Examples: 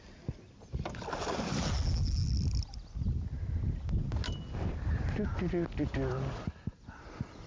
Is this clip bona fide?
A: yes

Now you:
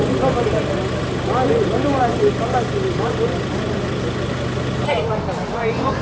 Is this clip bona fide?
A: yes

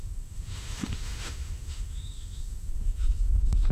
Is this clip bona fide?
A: no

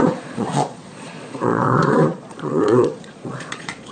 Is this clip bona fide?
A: no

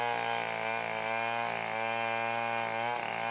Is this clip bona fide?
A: yes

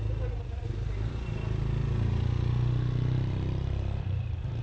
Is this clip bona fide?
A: yes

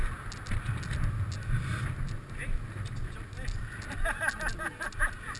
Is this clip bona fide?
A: yes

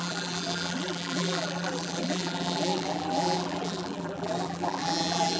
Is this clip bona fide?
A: no